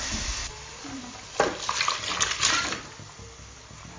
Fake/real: real